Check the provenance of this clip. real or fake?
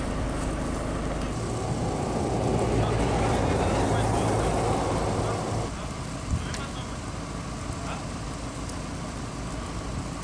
real